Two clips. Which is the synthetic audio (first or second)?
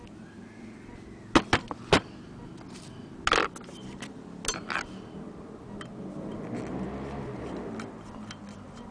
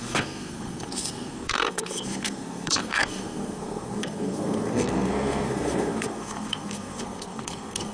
second